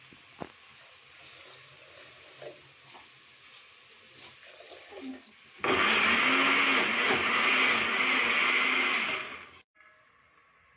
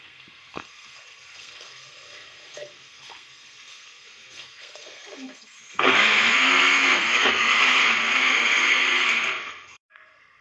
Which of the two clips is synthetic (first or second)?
second